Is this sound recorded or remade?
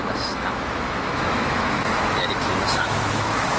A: remade